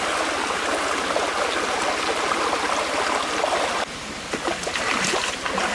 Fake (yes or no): no